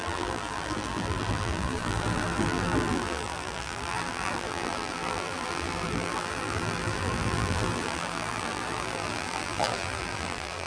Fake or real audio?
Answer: fake